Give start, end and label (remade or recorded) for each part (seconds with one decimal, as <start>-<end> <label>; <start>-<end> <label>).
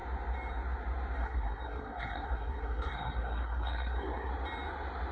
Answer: 0.0-1.2 recorded; 1.2-4.3 remade; 4.3-5.1 recorded